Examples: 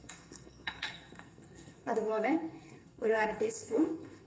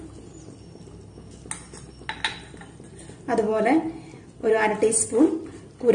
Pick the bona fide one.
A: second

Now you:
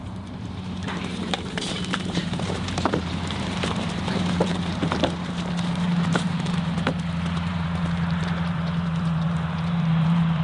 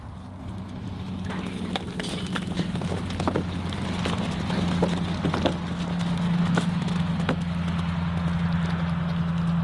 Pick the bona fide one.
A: second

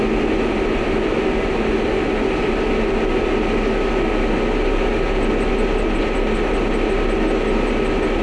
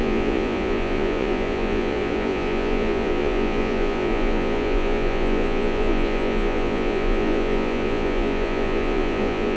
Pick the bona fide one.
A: first